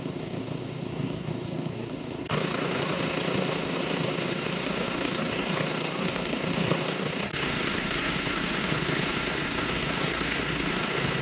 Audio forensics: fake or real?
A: fake